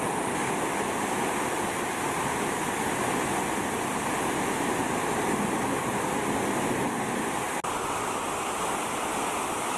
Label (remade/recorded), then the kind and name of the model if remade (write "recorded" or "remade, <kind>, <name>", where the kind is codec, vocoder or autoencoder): recorded